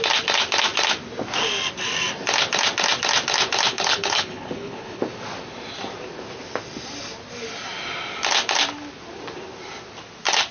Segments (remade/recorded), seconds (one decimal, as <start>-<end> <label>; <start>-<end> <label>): 0.0-3.7 recorded; 3.7-5.0 remade; 5.0-10.5 recorded